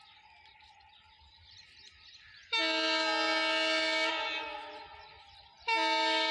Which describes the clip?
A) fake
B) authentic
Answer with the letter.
B